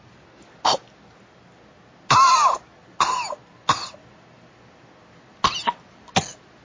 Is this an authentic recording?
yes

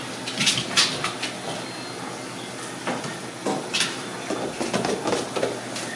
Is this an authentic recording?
yes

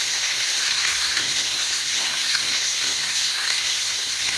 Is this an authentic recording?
no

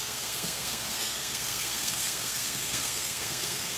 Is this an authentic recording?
no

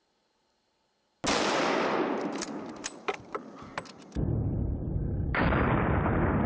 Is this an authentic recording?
yes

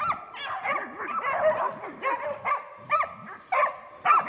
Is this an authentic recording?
yes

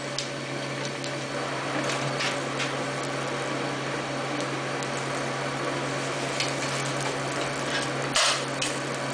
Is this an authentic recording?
yes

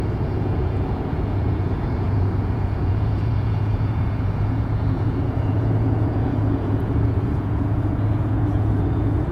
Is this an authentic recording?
no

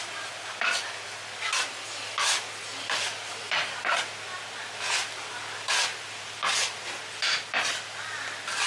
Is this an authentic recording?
yes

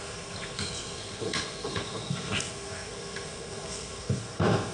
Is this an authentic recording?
no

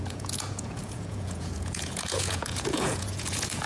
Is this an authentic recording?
no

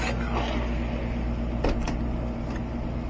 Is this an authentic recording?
yes